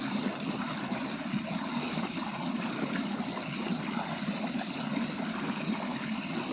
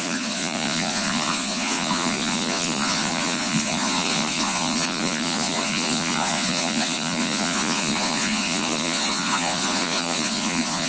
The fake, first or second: second